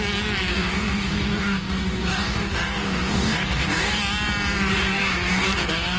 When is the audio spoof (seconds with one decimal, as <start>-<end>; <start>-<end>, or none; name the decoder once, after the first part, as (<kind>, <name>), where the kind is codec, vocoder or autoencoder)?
0.5-4.0 (codec, DAC); 4.7-6.0